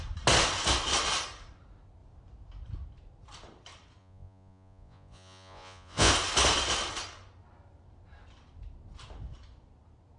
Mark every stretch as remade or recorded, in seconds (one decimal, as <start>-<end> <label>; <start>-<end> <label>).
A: 0.0-4.0 recorded; 4.0-6.1 remade; 6.1-10.2 recorded